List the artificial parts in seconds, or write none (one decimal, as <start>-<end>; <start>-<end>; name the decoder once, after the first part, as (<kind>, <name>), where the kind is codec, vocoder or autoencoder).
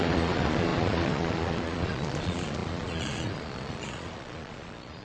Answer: 0.0-5.0 (vocoder, Vocos)